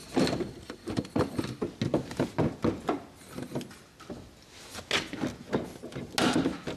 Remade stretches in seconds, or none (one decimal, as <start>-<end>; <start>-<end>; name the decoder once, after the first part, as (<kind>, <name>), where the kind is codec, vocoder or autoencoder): 0.0-1.6 (vocoder, BigVGAN v2)